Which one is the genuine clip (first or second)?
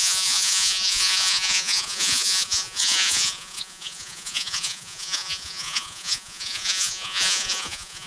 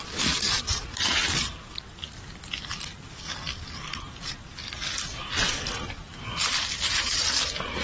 second